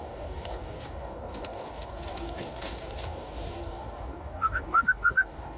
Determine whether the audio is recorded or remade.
remade